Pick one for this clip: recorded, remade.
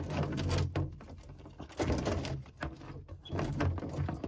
recorded